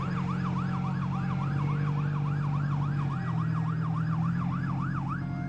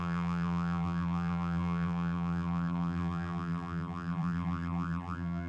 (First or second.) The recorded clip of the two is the first